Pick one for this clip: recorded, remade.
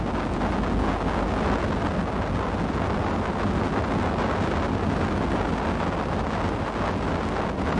recorded